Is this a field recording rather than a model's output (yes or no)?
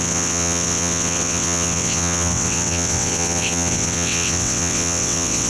no